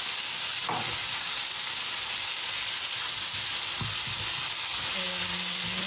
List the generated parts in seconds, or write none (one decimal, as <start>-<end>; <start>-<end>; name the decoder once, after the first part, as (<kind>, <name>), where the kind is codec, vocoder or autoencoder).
none